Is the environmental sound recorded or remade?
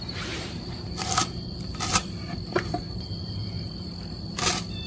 remade